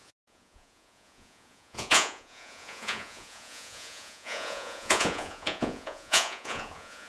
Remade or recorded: remade